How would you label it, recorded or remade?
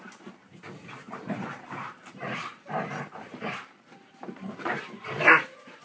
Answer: remade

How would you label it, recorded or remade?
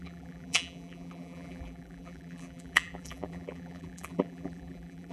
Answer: remade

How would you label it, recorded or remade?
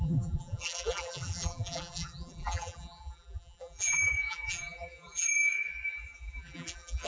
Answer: remade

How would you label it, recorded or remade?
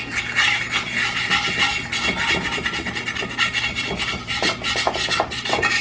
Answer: recorded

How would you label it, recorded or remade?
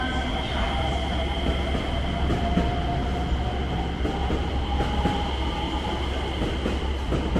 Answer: recorded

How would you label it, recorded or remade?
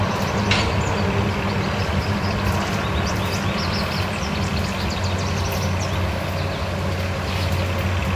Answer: recorded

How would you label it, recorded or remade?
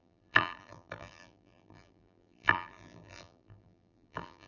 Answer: remade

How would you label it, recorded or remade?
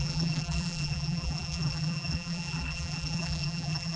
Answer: remade